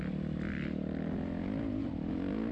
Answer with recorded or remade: recorded